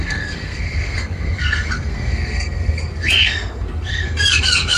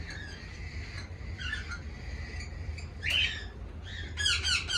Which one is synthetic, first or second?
first